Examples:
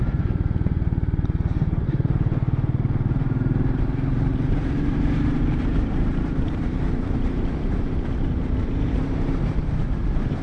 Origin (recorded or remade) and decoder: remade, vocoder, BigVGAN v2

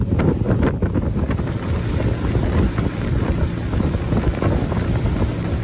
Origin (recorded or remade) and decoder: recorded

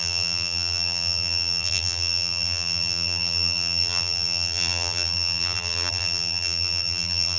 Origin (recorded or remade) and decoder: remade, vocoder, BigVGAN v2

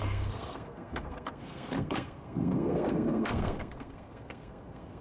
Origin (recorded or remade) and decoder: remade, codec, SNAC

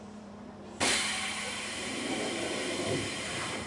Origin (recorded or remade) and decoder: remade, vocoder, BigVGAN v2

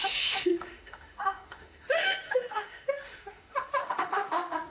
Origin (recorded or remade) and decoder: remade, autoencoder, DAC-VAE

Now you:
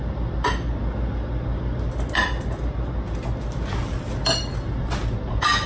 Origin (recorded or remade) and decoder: recorded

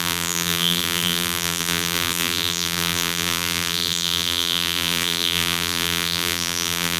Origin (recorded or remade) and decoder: remade, vocoder, BigVGAN v2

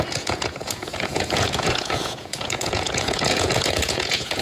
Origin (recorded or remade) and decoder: remade, vocoder, Vocos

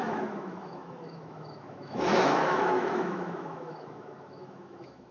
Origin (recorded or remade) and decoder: remade, autoencoder, DAC-VAE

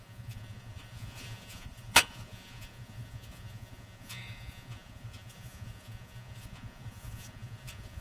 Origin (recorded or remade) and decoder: remade, vocoder, Vocos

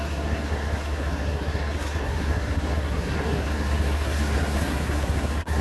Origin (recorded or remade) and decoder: remade, codec, SNAC